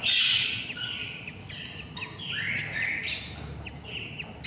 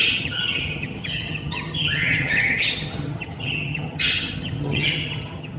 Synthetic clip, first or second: second